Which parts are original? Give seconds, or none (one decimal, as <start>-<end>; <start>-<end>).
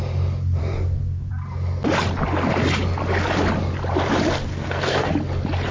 0.0-0.6; 1.3-4.5; 5.1-5.7